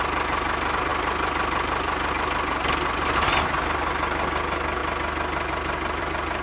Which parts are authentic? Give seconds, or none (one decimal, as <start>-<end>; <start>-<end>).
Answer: 0.0-6.4